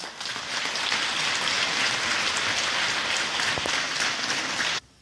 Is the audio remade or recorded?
recorded